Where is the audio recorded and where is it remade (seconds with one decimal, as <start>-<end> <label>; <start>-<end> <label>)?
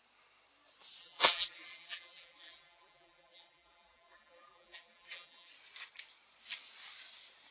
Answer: 0.0-1.0 recorded; 1.0-5.5 remade; 5.5-7.5 recorded